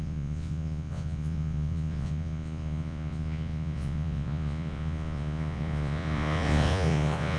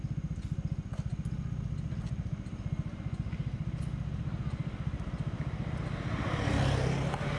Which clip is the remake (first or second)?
first